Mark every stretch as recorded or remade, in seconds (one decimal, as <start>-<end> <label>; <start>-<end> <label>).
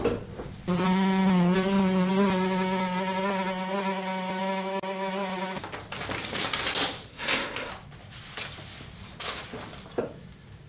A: 0.0-7.1 recorded; 7.1-7.7 remade; 7.7-10.7 recorded